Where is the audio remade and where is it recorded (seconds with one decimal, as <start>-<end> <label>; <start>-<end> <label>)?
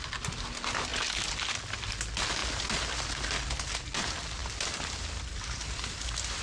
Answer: 0.0-6.4 recorded